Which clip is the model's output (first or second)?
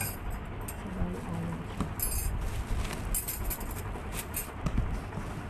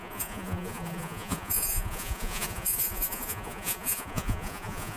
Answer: second